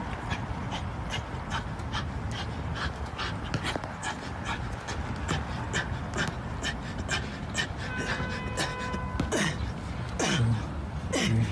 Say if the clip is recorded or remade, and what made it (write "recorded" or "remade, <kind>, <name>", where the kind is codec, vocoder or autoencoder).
recorded